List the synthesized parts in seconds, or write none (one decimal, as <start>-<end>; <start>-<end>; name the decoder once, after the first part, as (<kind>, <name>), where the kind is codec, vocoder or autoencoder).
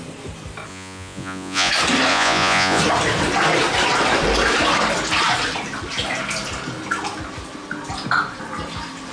0.7-1.7 (vocoder, Vocos); 2.1-2.8